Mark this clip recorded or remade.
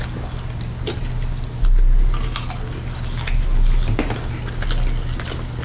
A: recorded